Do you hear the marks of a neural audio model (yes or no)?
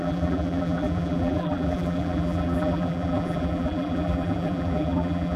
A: yes